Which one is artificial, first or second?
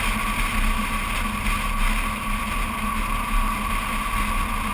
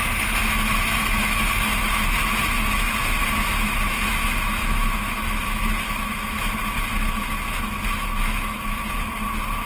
second